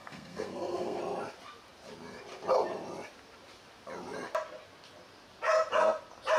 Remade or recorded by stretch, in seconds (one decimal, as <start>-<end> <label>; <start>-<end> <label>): 0.0-1.0 remade; 1.0-6.4 recorded